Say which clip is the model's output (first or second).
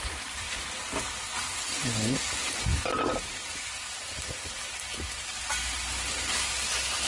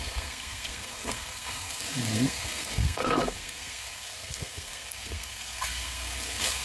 second